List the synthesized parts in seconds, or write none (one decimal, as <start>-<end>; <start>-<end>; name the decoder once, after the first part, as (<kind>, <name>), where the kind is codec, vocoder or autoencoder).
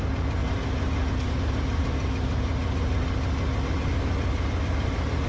none